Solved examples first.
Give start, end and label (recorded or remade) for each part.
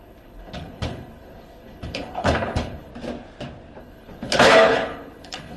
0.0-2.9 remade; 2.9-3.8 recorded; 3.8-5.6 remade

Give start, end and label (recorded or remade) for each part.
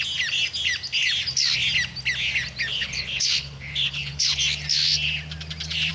0.0-2.7 recorded; 2.7-4.4 remade; 4.4-5.9 recorded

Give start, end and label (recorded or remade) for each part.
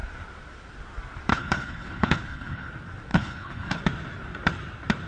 0.0-1.3 recorded; 1.3-2.7 remade; 2.7-3.1 recorded; 3.1-3.8 remade; 3.8-5.1 recorded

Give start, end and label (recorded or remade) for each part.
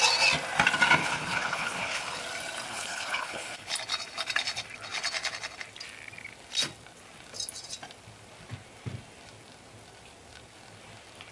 0.0-1.0 recorded; 1.0-2.2 remade; 2.2-2.7 recorded; 2.7-3.7 remade; 3.7-11.3 recorded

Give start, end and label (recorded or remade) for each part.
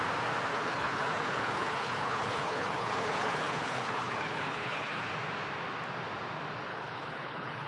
0.0-0.5 recorded; 0.5-5.1 remade; 5.1-6.7 recorded; 6.7-7.7 remade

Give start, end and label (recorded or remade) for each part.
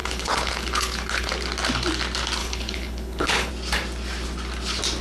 0.0-1.3 remade; 1.3-2.4 recorded; 2.4-3.5 remade; 3.5-5.0 recorded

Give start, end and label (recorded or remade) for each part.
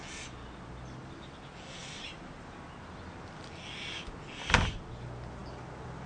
0.0-6.1 recorded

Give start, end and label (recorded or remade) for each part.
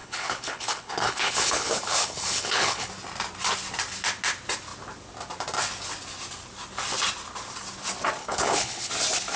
0.0-2.9 remade; 2.9-8.2 recorded; 8.2-8.9 remade; 8.9-9.4 recorded